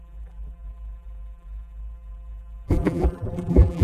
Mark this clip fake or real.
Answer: fake